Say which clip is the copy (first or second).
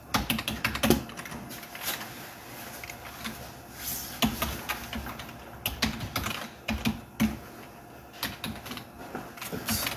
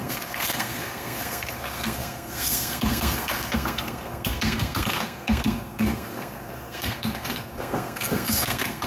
second